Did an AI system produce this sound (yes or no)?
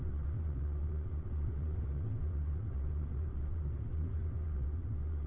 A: yes